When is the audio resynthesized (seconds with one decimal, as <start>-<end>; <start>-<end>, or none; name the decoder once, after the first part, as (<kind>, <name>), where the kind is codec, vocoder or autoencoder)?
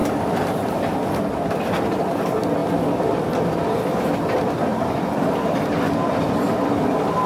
0.0-0.7 (vocoder, BigVGAN v2); 4.7-5.2